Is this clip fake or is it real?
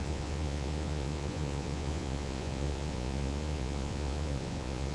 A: fake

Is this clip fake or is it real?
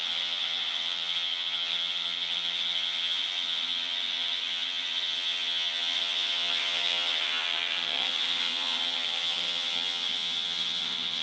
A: fake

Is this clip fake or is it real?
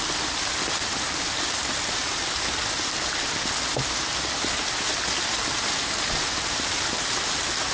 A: real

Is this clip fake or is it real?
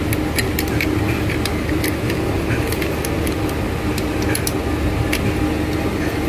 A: real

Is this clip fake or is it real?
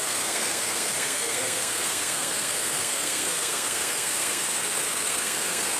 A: fake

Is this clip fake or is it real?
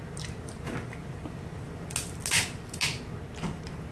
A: real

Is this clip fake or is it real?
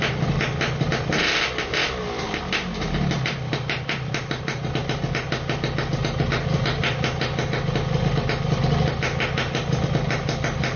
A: real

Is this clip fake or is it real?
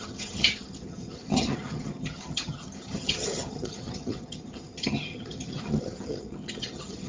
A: fake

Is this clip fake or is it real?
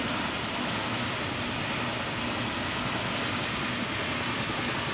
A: real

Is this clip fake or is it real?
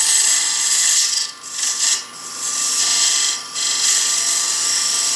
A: real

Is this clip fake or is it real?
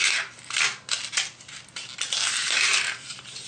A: real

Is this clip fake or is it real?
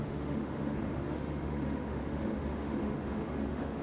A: fake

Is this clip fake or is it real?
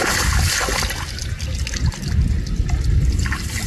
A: real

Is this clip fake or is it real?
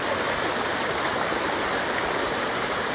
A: real